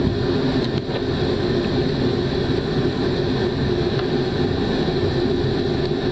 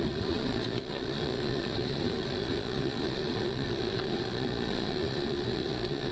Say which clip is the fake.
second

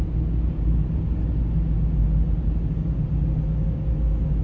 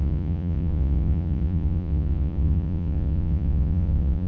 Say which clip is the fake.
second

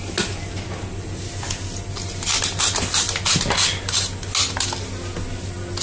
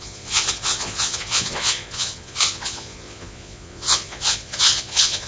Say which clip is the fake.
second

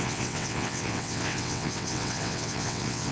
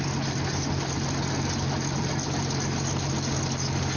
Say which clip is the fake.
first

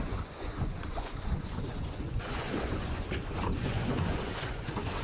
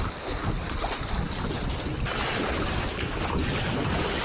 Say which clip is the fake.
first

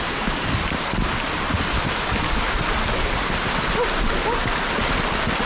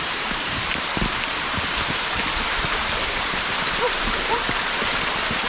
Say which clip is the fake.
second